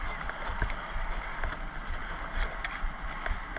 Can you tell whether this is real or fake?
real